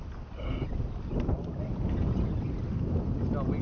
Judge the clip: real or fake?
real